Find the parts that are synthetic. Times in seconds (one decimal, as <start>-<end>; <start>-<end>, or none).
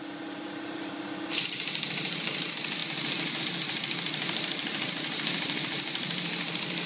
0.0-2.8; 3.4-6.9